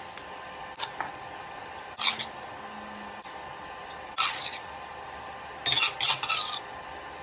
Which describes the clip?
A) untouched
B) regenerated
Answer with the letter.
A